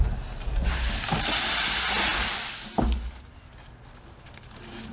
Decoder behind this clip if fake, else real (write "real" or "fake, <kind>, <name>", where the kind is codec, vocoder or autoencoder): real